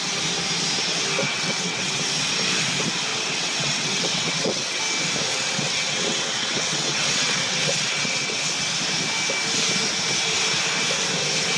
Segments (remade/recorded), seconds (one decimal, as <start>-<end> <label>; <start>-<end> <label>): 0.0-1.2 recorded; 1.2-2.3 remade; 2.3-3.1 recorded; 3.1-4.8 remade; 4.8-5.3 recorded; 5.3-8.5 remade; 8.5-11.6 recorded